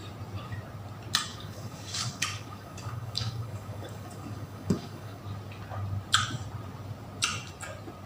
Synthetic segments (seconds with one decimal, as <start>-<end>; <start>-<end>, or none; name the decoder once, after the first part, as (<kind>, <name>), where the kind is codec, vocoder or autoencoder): 1.3-5.2 (codec, DAC)

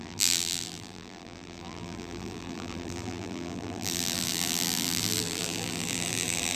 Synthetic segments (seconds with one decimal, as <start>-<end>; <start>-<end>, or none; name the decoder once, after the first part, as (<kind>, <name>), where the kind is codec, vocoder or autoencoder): 0.0-6.6 (vocoder, BigVGAN v2)

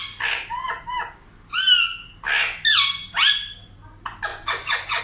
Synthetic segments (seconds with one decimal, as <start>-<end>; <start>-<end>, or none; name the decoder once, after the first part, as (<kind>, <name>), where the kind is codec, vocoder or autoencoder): 4.3-5.0 (vocoder, Vocos)

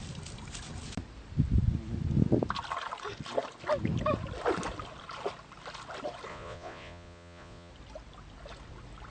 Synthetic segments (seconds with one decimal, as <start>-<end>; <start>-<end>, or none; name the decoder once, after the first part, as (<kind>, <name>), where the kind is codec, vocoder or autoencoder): 6.3-7.7 (vocoder, Vocos)

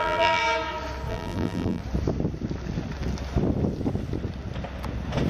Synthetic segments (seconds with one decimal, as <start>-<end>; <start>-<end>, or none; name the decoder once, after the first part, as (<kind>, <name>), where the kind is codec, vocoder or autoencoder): 0.0-0.4 (vocoder, BigVGAN v2); 1.1-1.8

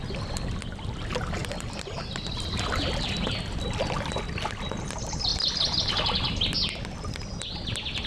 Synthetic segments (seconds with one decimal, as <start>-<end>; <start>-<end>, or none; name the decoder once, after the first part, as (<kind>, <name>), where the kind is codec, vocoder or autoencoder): 1.4-4.3 (vocoder, BigVGAN v2); 5.3-5.8

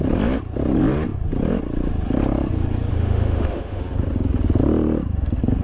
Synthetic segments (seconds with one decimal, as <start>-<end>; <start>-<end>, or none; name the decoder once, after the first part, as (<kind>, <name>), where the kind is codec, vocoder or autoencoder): 2.9-3.8 (autoencoder, DAC-VAE)

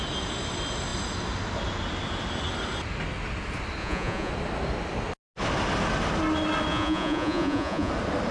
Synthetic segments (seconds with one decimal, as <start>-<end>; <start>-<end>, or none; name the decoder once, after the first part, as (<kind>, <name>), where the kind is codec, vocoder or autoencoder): 3.8-4.3 (vocoder, Vocos); 6.7-7.9